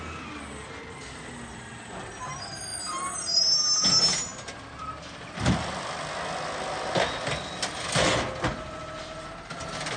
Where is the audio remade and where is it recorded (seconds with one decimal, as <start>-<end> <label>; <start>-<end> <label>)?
0.0-10.0 recorded